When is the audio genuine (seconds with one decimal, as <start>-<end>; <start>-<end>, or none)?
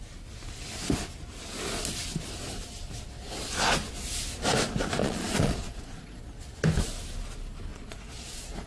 0.0-5.0; 6.2-7.7